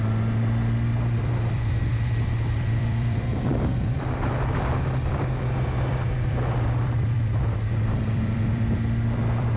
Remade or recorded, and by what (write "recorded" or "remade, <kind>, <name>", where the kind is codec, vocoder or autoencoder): remade, vocoder, BigVGAN v2